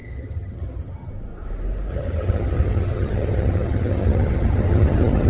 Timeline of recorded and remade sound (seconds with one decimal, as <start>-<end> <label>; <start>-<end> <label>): 0.0-1.1 remade; 1.1-1.9 recorded; 1.9-5.3 remade